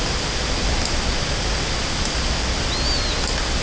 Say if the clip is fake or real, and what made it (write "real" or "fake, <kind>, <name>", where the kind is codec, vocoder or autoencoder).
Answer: real